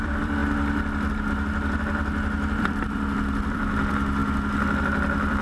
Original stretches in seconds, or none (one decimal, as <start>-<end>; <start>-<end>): 0.4-2.6; 4.2-4.8

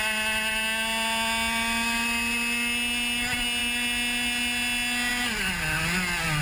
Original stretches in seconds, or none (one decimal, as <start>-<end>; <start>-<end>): 0.0-6.4

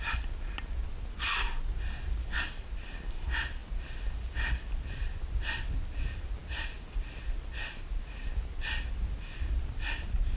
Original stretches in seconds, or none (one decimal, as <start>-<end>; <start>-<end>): 0.0-10.4

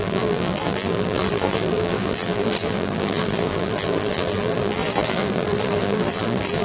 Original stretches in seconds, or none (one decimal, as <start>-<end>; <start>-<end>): none

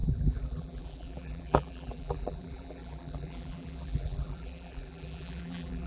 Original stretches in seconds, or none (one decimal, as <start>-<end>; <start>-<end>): none

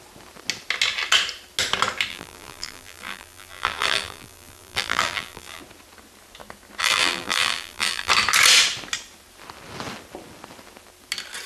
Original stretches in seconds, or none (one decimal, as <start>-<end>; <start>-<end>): 0.0-2.1; 5.6-6.8; 8.1-11.5

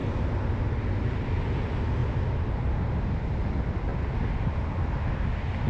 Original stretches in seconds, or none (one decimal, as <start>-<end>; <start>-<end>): 0.0-0.8; 2.0-2.8; 3.9-5.7